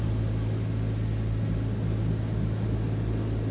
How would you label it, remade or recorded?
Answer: recorded